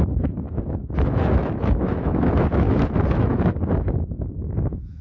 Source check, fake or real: fake